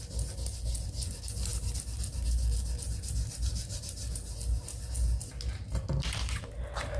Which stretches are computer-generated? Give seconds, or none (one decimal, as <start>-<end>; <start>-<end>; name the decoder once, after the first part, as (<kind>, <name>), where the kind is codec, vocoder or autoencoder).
none